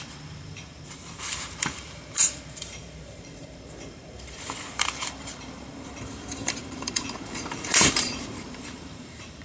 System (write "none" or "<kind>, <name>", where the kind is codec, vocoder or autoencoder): vocoder, BigVGAN v2